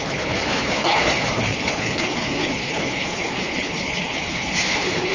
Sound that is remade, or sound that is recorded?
remade